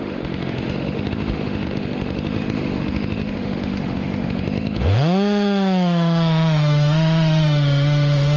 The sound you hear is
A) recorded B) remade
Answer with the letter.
B